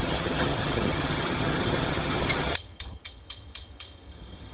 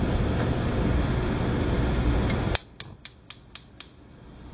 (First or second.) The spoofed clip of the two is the first